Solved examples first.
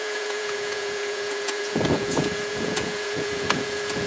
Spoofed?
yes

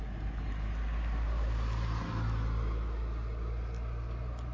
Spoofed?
no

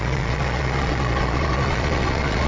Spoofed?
yes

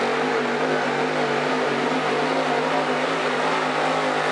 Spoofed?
no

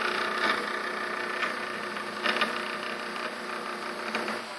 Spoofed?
no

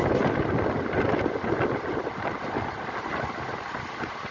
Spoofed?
no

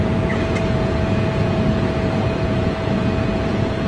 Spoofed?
yes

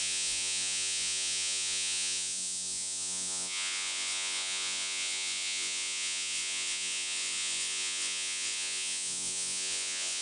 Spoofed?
yes